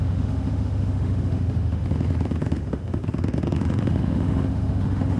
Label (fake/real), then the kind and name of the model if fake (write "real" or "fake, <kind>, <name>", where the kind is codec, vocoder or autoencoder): fake, autoencoder, DAC-VAE